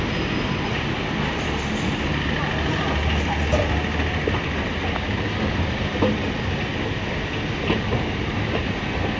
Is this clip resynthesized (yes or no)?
no